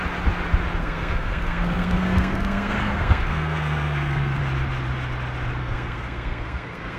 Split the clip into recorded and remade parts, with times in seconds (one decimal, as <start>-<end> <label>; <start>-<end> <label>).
0.0-0.8 recorded; 0.8-4.4 remade; 4.4-5.6 recorded; 5.6-7.0 remade